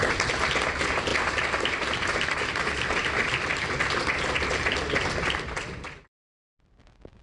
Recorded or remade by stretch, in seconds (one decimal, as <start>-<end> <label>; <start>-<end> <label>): 0.0-7.2 recorded